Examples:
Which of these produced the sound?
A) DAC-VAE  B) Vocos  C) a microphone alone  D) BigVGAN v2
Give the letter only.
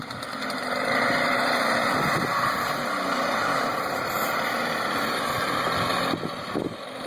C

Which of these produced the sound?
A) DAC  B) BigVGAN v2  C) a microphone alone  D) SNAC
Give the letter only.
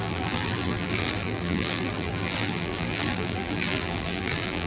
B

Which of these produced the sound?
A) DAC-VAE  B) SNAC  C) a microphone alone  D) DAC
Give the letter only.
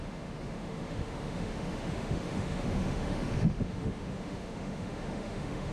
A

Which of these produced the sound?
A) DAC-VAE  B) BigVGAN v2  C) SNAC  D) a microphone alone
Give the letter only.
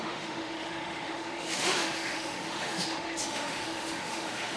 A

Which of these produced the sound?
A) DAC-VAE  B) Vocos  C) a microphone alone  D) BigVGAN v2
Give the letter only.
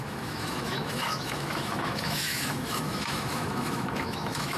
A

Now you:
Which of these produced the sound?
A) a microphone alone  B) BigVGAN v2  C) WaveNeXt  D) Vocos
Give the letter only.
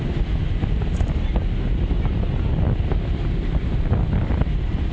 A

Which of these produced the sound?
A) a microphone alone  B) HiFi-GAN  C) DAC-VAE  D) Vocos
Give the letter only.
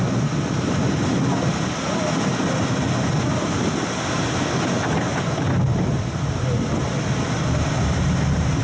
A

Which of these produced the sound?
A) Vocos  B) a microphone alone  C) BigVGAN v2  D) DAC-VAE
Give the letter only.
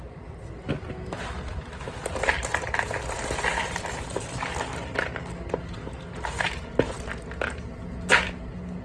B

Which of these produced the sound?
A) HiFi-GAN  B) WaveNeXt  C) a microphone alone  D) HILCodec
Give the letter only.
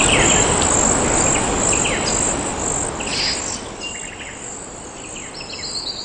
C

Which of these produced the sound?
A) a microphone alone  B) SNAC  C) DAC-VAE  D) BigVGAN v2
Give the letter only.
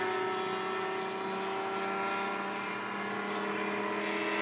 A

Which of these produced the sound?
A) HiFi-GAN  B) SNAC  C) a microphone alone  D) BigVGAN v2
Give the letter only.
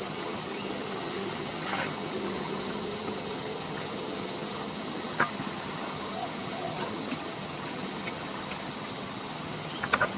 A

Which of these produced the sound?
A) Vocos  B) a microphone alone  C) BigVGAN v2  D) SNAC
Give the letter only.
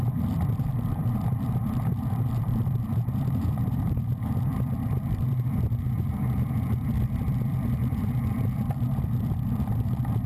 C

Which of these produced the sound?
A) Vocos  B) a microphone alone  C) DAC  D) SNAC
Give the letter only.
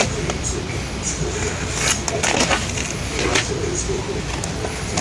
B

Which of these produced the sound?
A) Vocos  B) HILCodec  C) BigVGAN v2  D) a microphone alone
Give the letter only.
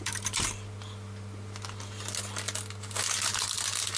D